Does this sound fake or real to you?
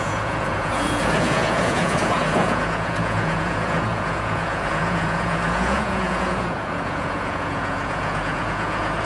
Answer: fake